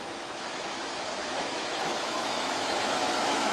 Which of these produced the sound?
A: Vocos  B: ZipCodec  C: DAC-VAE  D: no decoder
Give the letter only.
C